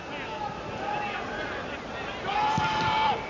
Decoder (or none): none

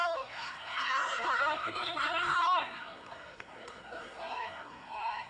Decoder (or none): codec, SNAC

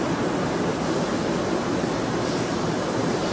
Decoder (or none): vocoder, BigVGAN v2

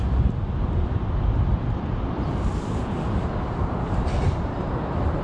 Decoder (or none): vocoder, BigVGAN v2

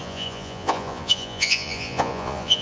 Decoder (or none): vocoder, Vocos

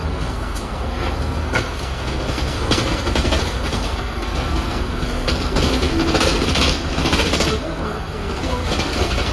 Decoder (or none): codec, SNAC